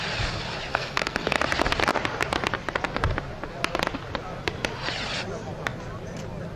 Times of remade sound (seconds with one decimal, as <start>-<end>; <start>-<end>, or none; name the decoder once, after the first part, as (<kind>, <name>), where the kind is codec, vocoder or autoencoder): 0.7-1.4 (codec, SNAC)